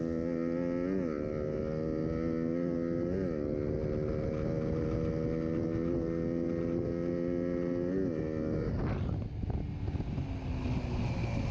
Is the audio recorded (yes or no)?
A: yes